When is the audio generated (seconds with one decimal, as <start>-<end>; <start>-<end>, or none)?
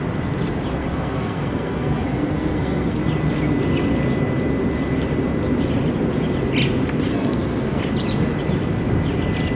0.8-3.0; 7.1-7.8